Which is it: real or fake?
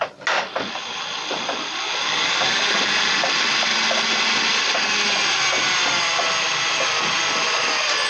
real